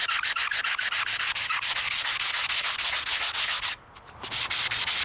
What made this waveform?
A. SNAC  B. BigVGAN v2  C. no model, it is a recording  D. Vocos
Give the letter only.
C